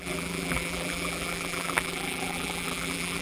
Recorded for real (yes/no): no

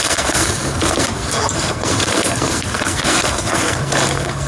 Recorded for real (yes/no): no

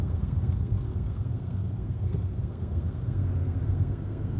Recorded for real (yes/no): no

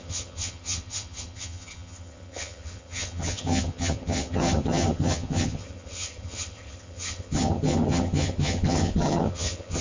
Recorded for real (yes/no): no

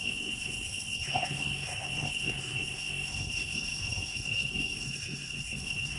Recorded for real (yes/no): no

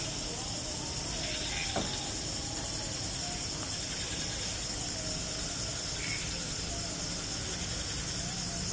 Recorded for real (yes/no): yes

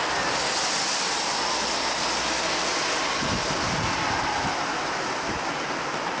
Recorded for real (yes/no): yes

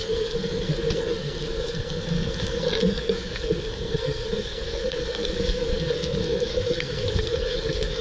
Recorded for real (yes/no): no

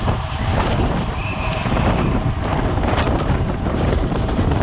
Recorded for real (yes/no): no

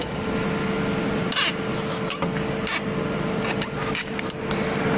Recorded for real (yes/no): yes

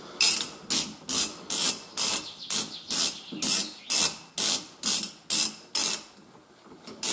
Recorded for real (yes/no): yes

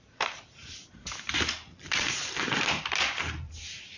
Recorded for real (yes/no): no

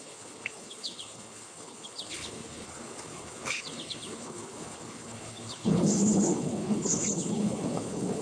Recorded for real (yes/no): no